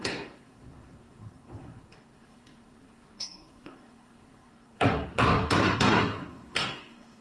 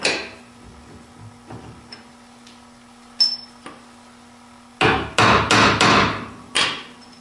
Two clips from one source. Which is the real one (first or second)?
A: second